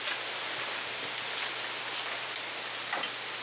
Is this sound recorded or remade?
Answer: recorded